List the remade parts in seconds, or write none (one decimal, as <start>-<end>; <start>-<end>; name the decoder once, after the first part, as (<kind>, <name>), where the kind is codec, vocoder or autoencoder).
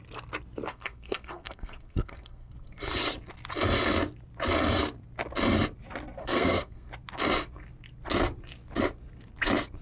0.7-2.5 (codec, SNAC); 6.2-6.9